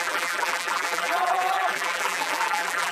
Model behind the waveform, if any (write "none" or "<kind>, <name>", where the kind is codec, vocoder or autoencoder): vocoder, BigVGAN v2